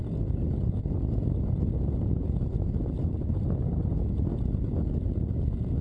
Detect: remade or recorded recorded